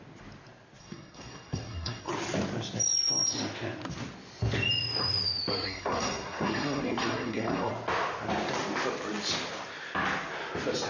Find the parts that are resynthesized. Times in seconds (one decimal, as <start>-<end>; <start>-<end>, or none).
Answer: 0.8-2.1; 5.5-7.7